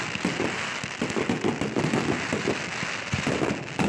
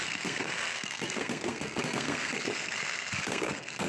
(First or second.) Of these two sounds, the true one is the first